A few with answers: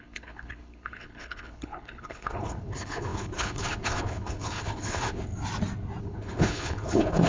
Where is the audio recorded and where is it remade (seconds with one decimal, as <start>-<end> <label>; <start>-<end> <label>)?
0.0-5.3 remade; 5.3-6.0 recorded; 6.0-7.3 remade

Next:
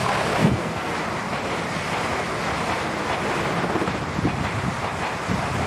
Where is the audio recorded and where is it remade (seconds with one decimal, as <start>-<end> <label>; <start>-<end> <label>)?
0.0-0.4 recorded; 0.4-0.9 remade; 0.9-5.7 recorded

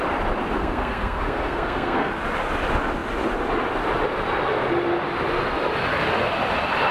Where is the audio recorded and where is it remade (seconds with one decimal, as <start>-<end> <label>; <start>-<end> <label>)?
0.0-0.6 recorded; 0.6-2.1 remade; 2.1-6.9 recorded